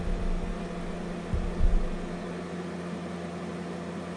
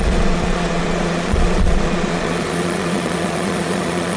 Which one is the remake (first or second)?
second